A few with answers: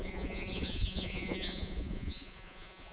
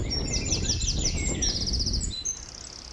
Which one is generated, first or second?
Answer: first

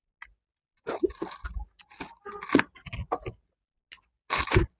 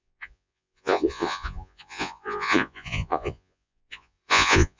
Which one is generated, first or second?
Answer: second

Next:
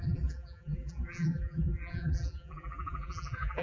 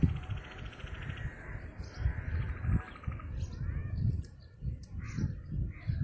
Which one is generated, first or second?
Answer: first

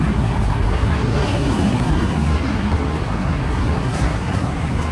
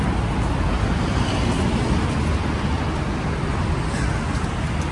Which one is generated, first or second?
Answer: first